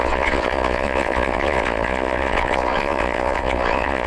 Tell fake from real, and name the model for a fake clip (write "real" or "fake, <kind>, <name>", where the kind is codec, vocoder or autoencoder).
fake, vocoder, Vocos